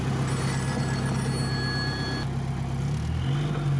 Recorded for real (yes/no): yes